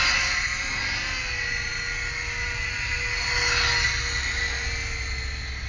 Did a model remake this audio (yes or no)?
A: no